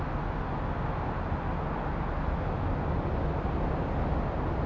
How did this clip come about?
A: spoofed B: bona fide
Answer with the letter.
B